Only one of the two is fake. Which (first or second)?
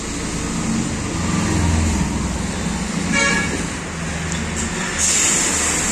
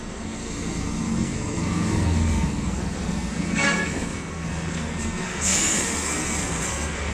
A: second